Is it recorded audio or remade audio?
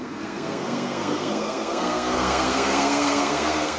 remade